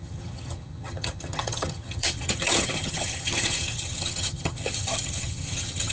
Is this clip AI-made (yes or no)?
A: yes